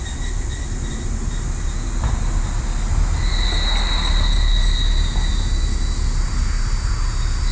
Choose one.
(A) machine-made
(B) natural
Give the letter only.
B